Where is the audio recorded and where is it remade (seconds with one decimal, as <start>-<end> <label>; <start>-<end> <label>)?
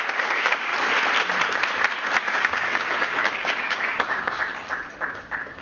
0.0-0.7 remade; 0.7-2.2 recorded; 2.2-4.5 remade; 4.5-5.1 recorded; 5.1-5.6 remade